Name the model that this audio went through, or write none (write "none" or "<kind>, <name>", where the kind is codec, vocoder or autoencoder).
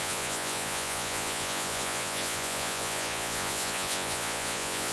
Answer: vocoder, Vocos